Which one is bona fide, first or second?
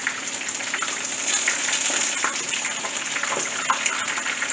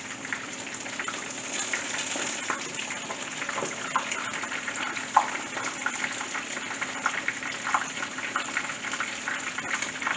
first